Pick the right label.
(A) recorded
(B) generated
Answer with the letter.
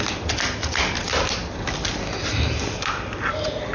B